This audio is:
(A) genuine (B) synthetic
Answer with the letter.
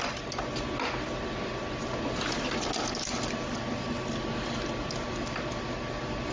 A